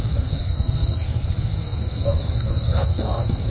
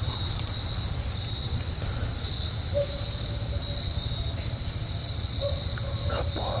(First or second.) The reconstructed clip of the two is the first